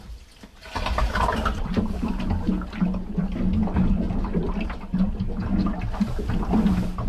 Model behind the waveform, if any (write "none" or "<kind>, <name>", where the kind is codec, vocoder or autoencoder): none